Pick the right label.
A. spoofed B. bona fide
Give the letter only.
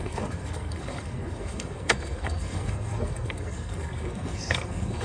A